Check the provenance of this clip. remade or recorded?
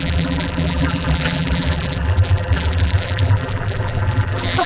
remade